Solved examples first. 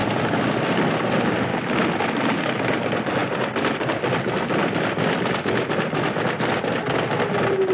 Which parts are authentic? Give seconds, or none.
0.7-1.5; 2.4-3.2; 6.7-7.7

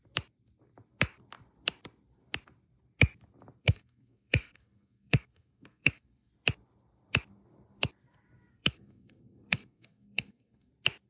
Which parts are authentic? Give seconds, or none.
0.0-3.6; 6.3-8.5; 10.7-11.1

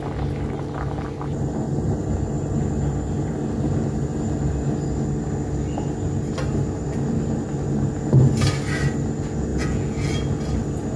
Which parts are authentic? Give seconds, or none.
0.0-9.5; 10.1-11.0

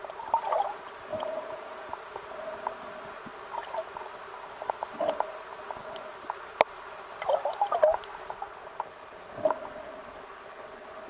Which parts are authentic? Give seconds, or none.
0.0-1.1; 1.9-11.1